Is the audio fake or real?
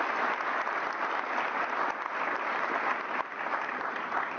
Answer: real